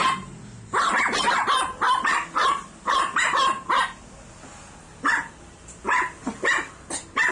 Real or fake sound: real